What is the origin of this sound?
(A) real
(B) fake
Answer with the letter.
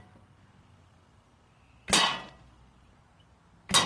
A